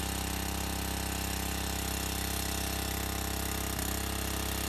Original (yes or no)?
yes